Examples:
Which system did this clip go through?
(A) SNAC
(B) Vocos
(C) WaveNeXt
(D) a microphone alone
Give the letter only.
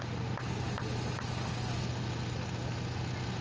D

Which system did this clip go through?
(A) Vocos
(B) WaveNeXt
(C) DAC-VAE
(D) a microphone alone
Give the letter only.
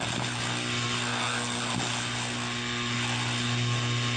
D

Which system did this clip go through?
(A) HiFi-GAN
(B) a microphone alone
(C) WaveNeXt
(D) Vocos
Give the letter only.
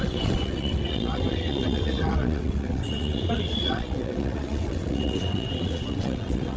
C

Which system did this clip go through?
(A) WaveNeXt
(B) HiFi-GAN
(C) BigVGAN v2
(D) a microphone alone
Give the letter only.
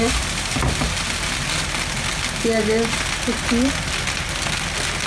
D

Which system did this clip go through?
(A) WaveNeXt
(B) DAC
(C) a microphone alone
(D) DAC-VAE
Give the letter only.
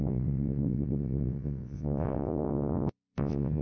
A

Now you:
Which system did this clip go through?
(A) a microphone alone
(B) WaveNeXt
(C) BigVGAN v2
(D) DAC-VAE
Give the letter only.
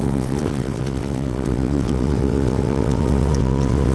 B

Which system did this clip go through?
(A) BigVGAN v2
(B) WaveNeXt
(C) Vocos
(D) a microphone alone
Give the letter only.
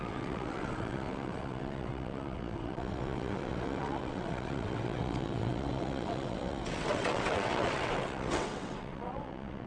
B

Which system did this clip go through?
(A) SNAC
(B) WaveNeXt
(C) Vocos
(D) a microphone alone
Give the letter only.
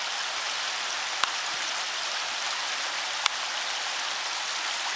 D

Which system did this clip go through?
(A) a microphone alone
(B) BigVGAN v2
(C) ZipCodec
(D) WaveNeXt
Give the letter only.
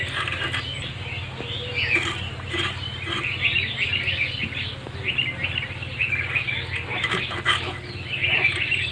A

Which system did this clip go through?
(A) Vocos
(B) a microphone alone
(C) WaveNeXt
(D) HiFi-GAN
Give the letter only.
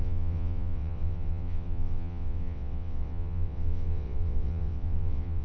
C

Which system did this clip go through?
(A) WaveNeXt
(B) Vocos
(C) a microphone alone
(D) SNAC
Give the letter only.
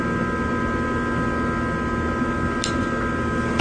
C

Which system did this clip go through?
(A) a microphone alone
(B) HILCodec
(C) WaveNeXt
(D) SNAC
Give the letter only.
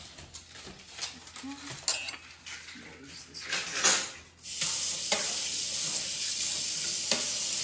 A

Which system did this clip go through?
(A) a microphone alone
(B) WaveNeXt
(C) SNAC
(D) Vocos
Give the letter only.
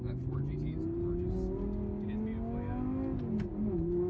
A